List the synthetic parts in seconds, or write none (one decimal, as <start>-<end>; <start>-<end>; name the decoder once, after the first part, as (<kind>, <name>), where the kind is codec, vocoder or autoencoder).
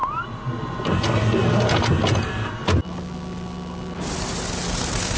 none